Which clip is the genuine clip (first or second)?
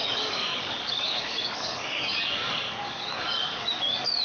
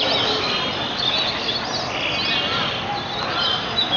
second